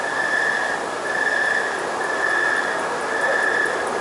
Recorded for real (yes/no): yes